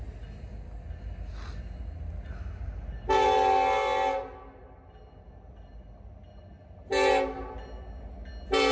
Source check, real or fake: real